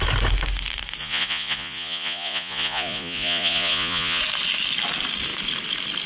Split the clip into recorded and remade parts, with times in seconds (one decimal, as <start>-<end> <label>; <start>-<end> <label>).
0.0-1.0 recorded; 1.0-4.2 remade; 4.2-6.1 recorded